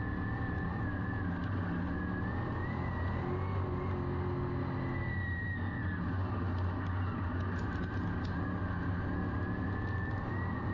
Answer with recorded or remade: recorded